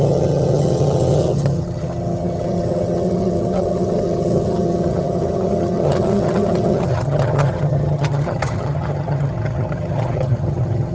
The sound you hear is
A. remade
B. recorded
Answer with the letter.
A